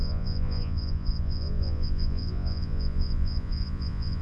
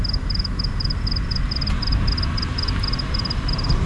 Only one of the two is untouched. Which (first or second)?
second